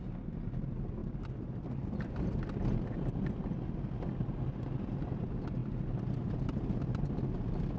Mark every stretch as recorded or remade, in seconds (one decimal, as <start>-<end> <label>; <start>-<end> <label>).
0.0-7.8 recorded